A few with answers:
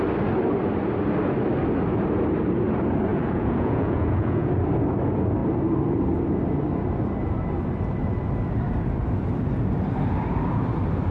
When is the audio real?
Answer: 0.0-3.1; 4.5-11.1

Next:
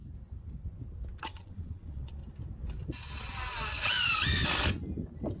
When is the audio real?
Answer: 0.0-1.2; 2.2-5.4

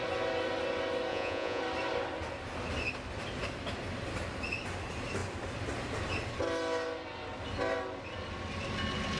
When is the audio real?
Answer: 0.0-1.1; 1.6-9.2